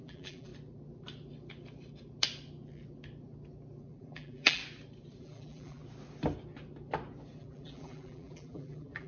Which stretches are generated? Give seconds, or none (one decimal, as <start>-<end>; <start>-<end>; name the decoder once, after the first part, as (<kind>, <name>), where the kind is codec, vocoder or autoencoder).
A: 0.0-0.5 (vocoder, BigVGAN v2); 3.8-4.6; 5.2-5.8; 7.4-9.1